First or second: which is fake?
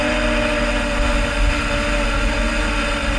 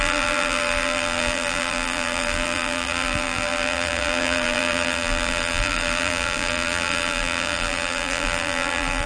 second